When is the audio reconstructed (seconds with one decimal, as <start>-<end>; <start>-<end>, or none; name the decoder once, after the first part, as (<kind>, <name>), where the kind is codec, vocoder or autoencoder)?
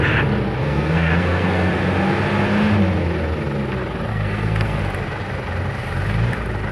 0.6-1.7 (codec, SNAC); 4.1-4.8